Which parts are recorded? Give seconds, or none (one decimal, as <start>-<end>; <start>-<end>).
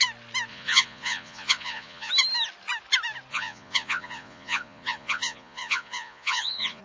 0.0-0.5; 2.1-3.3